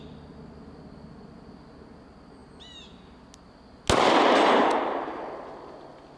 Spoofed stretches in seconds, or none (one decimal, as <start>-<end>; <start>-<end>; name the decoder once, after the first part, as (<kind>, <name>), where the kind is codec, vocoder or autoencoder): none